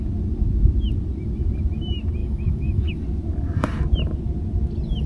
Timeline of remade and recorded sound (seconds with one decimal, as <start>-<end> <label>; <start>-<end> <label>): 0.0-2.2 recorded; 2.2-2.9 remade; 2.9-5.1 recorded